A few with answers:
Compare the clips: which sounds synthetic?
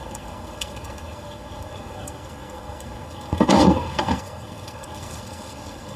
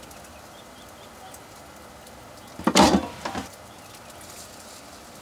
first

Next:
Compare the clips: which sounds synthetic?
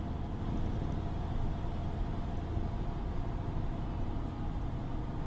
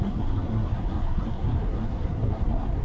second